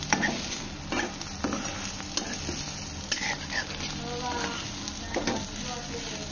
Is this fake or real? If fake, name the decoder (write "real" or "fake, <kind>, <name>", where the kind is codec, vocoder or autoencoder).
real